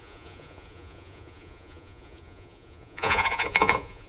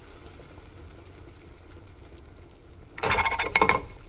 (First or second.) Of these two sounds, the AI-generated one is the first